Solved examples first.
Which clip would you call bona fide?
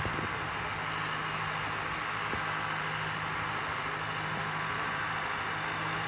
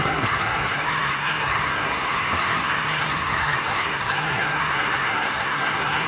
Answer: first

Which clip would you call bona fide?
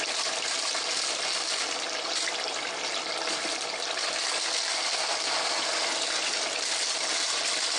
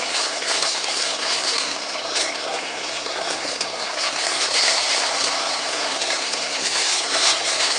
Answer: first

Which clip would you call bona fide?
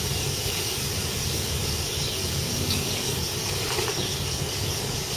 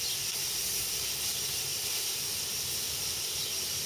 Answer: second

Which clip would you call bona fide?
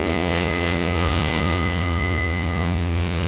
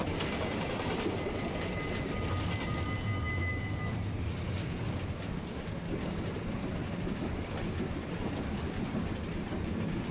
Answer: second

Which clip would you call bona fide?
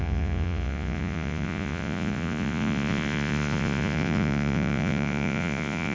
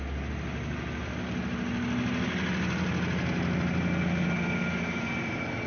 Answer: second